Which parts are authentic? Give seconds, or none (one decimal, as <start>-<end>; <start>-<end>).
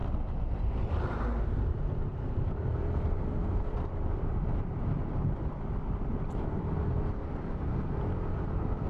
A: 0.9-2.1; 6.9-8.9